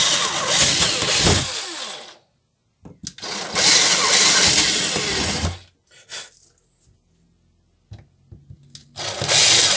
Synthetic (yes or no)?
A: no